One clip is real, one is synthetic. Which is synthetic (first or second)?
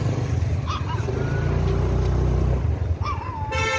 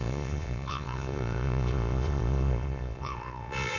second